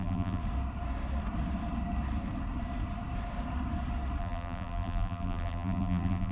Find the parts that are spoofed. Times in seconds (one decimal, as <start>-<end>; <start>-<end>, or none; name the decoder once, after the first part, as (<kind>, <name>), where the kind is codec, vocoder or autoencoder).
0.0-0.4 (vocoder, BigVGAN v2); 4.2-6.3

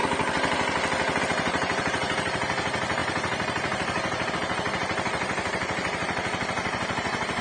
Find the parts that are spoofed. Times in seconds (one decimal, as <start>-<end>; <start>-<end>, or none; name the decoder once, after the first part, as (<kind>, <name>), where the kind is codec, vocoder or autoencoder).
1.2-7.4 (vocoder, BigVGAN v2)

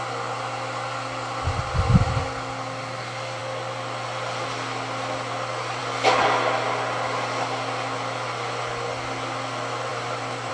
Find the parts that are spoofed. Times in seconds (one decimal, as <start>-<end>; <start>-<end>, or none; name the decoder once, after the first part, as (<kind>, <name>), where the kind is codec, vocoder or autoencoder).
9.9-10.5 (vocoder, BigVGAN v2)

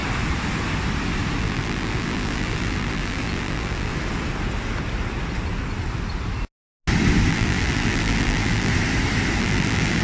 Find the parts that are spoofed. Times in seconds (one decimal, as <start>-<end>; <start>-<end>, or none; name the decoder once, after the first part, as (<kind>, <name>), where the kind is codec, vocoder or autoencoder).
1.4-3.9 (vocoder, BigVGAN v2); 7.3-8.7; 9.4-10.0